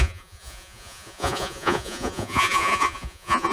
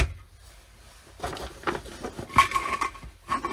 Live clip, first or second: second